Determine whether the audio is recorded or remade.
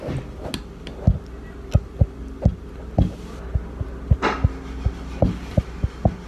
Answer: recorded